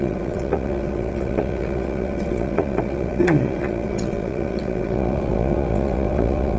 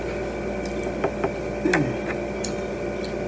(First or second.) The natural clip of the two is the second